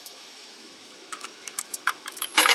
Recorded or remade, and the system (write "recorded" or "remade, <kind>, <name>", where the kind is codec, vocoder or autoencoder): remade, autoencoder, DAC-VAE